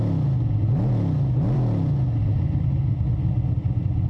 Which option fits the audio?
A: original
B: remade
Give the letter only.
A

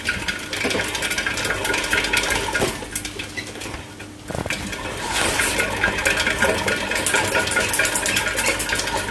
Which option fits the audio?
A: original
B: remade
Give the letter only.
A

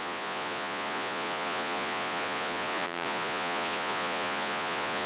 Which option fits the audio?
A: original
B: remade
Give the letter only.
B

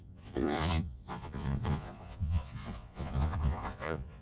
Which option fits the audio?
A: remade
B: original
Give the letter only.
A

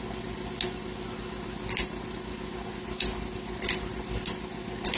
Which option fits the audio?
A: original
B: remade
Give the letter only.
A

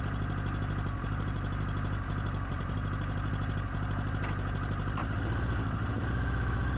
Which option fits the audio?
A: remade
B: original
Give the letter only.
B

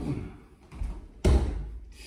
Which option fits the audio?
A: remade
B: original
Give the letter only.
B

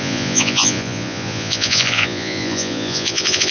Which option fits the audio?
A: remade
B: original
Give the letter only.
A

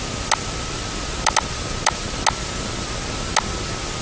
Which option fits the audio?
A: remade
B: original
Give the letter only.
B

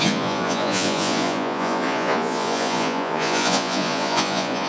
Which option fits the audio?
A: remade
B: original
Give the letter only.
A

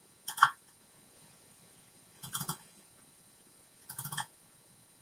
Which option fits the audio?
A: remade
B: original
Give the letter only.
A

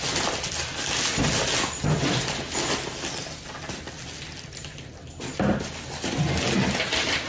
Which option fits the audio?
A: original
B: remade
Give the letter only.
A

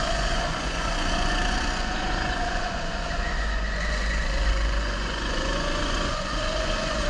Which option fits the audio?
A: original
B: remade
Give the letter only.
B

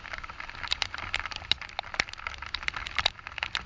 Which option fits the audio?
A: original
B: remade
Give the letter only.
A